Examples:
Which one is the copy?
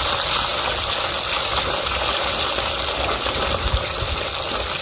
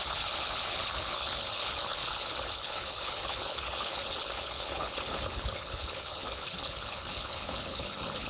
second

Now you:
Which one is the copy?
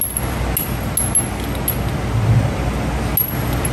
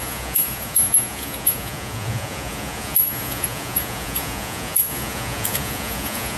second